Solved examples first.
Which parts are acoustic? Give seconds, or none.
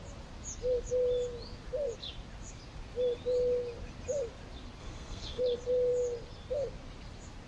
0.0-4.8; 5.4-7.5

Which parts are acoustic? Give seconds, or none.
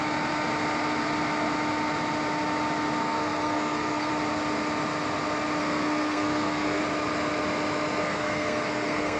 0.0-3.0; 4.1-5.6; 6.8-8.0